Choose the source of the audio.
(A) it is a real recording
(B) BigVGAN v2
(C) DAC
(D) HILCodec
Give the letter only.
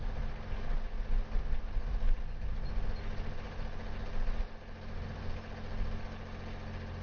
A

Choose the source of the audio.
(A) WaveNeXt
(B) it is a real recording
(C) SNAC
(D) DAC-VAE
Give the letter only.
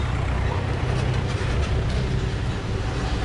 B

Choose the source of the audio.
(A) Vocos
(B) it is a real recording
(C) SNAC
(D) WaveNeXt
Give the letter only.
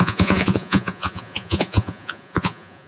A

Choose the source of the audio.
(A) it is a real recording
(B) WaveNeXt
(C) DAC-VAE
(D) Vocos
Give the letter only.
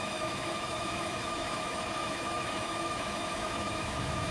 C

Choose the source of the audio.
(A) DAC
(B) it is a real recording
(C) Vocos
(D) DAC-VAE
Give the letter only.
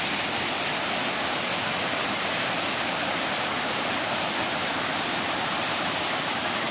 B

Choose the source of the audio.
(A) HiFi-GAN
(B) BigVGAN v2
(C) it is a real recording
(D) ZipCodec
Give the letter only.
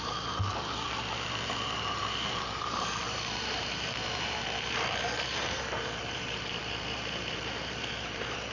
B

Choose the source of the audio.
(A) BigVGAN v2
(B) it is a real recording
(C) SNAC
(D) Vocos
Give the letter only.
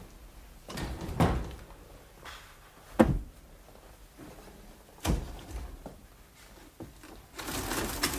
B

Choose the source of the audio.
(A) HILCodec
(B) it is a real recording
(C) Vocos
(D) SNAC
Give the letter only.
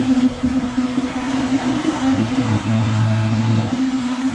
D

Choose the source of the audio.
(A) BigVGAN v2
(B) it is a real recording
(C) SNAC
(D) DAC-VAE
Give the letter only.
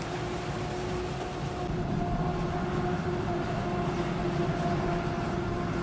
B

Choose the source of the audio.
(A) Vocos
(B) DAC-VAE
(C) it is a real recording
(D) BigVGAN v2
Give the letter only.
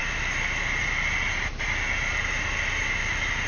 C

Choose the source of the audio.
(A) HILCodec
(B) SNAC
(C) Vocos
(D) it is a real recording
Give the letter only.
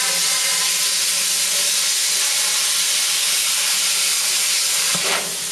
D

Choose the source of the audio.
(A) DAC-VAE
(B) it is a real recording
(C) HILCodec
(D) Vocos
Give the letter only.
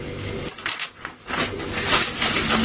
B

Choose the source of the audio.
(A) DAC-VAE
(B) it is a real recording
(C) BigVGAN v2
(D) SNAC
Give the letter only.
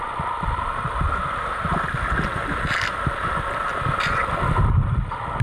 B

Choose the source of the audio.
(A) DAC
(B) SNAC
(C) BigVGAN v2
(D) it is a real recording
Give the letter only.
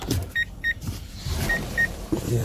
C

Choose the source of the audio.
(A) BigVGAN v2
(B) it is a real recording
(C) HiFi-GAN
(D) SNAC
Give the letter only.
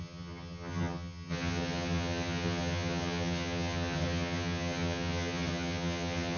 C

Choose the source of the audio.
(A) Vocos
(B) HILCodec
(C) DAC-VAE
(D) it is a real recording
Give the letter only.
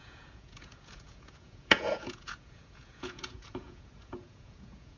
A